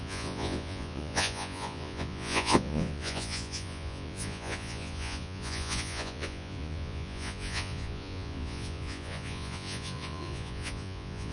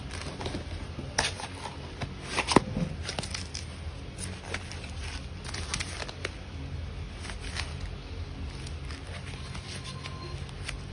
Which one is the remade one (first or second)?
first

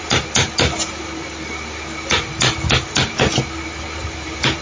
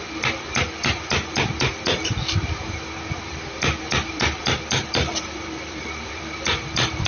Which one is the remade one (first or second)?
second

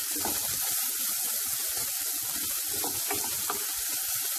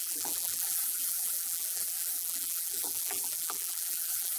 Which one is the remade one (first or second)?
second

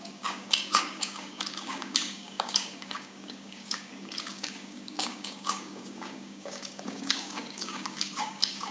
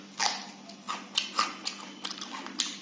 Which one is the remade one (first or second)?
first